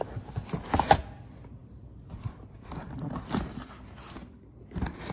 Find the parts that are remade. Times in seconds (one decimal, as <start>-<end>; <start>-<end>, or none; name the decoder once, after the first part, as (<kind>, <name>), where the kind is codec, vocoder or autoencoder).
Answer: none